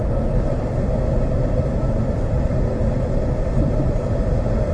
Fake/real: real